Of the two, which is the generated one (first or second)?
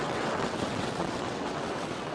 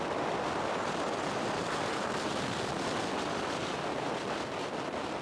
first